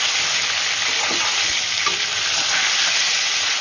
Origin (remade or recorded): recorded